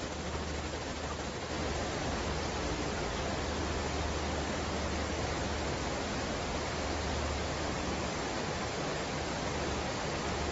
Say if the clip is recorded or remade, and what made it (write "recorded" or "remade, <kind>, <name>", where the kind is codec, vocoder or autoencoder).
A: recorded